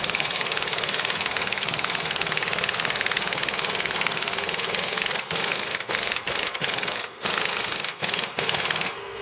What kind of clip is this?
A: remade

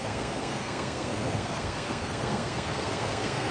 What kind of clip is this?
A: remade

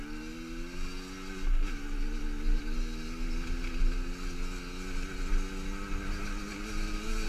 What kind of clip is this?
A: recorded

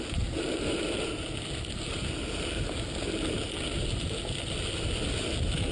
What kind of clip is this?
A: recorded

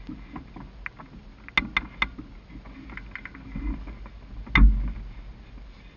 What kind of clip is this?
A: recorded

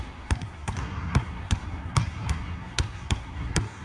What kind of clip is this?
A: remade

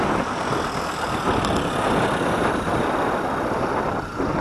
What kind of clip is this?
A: recorded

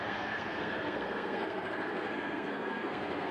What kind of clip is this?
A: remade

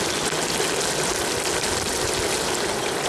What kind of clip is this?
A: recorded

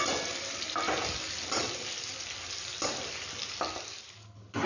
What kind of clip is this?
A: recorded